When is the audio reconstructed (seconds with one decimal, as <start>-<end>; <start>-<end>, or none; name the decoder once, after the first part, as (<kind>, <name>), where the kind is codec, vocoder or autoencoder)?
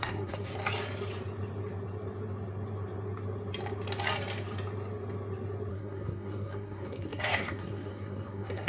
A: 0.0-0.5 (codec, SNAC); 5.7-8.7